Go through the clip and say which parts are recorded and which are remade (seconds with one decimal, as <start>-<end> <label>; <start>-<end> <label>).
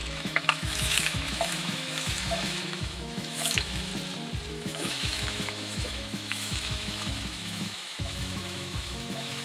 0.0-3.9 remade; 3.9-4.5 recorded; 4.5-9.4 remade